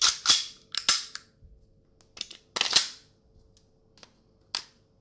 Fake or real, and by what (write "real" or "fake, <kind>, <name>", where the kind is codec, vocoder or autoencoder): real